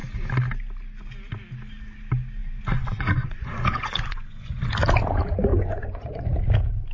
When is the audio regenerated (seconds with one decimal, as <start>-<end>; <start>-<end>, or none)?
2.4-4.6; 5.5-6.3